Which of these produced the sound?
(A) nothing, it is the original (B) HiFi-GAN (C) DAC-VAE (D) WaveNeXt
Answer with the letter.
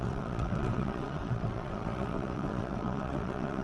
D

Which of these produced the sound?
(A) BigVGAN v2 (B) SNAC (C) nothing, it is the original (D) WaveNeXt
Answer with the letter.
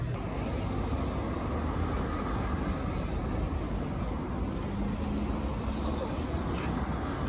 C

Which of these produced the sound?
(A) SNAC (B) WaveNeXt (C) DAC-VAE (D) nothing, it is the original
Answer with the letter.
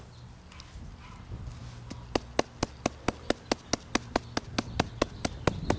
D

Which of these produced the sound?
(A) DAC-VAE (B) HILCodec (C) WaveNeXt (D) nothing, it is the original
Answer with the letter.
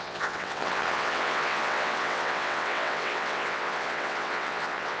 C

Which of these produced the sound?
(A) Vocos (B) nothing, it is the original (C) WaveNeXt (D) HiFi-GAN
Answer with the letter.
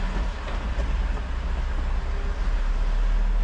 B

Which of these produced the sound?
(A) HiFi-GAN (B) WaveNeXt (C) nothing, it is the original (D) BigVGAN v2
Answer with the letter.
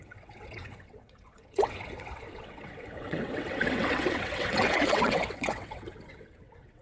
B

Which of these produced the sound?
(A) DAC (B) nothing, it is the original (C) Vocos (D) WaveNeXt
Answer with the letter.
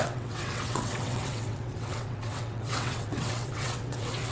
D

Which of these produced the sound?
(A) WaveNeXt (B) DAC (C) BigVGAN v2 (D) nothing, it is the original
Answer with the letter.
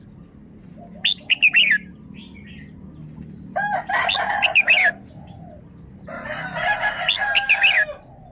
D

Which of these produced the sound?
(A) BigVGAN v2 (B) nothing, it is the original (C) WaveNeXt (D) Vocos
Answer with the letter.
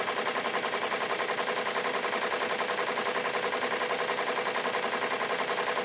B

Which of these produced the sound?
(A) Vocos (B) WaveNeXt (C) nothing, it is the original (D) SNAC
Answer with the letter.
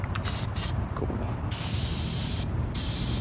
C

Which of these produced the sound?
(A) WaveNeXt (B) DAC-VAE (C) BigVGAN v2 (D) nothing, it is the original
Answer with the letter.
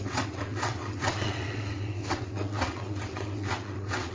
A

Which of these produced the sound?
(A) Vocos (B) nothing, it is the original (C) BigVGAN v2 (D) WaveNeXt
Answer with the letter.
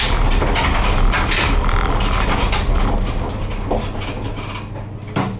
B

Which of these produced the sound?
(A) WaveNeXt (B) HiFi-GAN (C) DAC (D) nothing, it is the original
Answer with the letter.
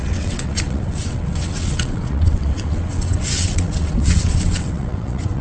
A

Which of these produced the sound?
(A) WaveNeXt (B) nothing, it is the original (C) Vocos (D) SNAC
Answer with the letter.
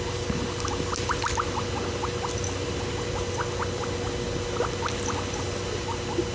B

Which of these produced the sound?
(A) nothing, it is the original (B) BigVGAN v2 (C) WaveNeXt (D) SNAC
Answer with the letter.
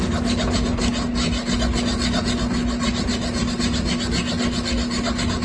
A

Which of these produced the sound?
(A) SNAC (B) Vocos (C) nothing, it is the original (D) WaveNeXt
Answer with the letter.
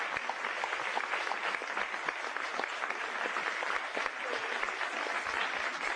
C